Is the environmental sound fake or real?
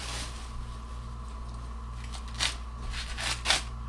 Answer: real